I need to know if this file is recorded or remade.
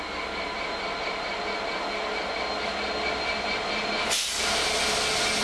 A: recorded